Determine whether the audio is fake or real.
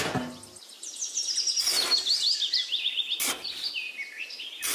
real